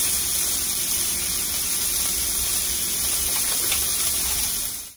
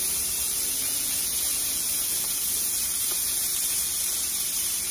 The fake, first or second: second